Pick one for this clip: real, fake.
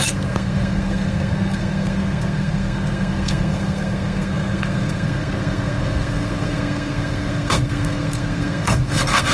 fake